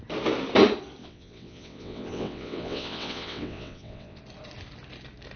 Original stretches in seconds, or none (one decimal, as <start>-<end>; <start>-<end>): 0.0-1.0; 4.2-5.4